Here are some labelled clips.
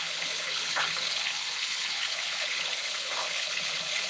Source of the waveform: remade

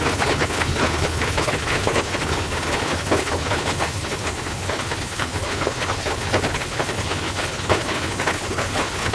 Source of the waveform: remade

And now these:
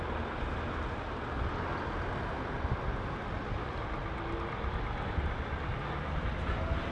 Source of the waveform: recorded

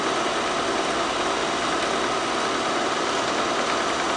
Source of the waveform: recorded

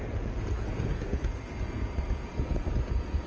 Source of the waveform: remade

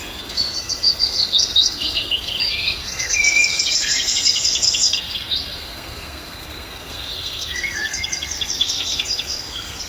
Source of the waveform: remade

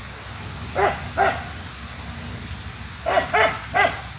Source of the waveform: recorded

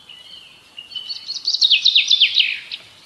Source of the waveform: recorded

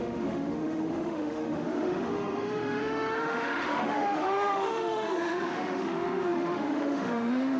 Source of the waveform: remade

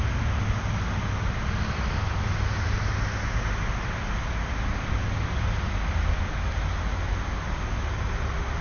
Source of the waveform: recorded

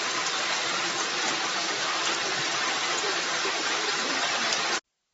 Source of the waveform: recorded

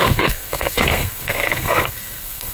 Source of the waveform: remade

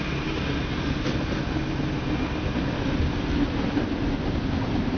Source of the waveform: recorded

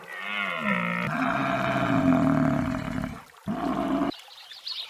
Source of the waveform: recorded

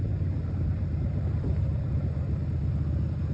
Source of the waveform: recorded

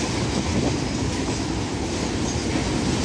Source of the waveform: recorded